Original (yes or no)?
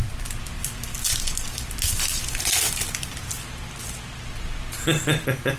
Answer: no